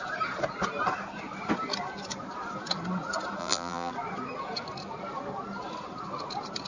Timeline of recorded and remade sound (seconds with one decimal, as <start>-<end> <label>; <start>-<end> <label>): 0.0-3.4 recorded; 3.4-3.9 remade; 3.9-6.7 recorded